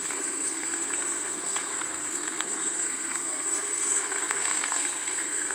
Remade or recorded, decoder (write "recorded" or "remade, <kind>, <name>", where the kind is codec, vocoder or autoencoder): remade, codec, SNAC